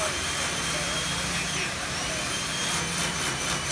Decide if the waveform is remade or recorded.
remade